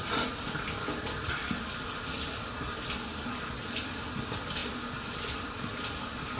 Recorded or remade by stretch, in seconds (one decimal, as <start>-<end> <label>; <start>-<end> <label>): 0.0-6.4 recorded